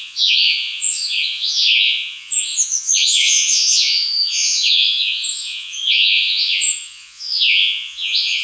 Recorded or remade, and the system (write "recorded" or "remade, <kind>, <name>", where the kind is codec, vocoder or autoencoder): remade, vocoder, Vocos